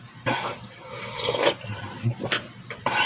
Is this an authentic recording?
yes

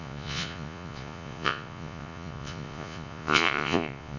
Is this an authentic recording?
no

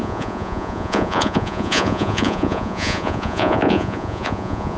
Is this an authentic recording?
no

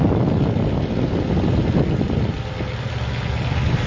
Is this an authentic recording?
yes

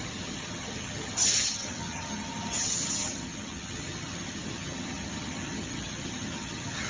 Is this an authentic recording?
no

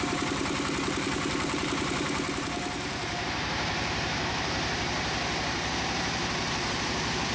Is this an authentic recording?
no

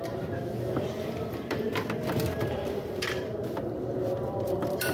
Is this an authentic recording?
no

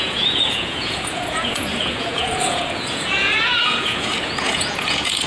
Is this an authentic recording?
no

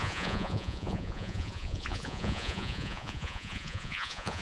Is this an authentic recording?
no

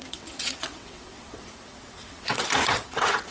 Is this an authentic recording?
no